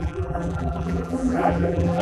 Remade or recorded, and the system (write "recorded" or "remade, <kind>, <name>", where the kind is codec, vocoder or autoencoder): remade, vocoder, BigVGAN v2